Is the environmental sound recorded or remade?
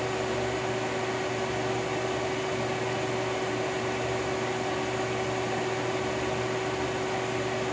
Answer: recorded